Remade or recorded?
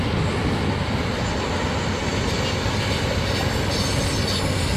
recorded